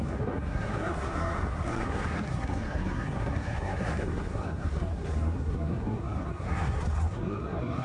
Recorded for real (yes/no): no